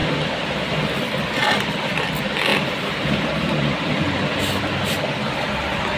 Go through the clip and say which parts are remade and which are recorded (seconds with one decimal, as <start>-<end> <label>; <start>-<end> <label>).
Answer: 0.0-6.0 recorded